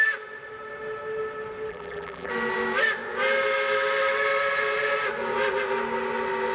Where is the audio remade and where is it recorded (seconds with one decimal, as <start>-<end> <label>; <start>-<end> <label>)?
0.0-1.7 recorded; 1.7-2.3 remade; 2.3-6.5 recorded